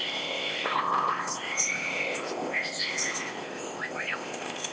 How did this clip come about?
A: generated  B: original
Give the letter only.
A